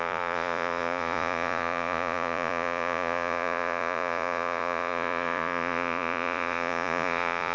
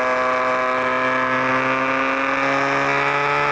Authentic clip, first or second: second